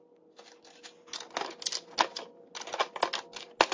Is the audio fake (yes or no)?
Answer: no